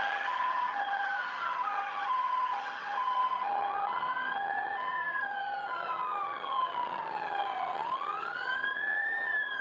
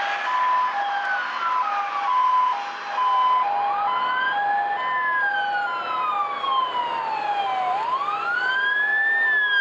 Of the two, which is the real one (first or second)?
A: second